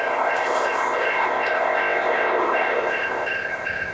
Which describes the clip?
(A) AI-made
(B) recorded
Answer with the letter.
A